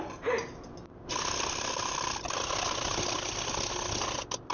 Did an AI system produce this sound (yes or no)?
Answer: no